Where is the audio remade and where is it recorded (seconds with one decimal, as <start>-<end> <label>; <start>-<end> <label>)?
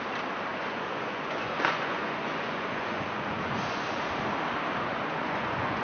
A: 0.0-0.5 recorded; 0.5-4.0 remade; 4.0-4.9 recorded; 4.9-5.8 remade